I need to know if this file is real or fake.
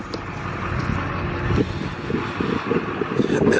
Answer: real